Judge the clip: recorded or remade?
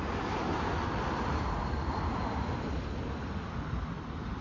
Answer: recorded